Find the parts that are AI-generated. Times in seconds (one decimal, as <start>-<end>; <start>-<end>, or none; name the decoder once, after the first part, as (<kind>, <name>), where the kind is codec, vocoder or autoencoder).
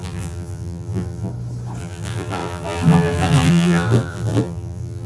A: 0.0-1.3 (vocoder, BigVGAN v2); 1.8-5.1